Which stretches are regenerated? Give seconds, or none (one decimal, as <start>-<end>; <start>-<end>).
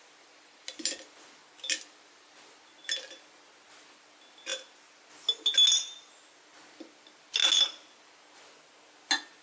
none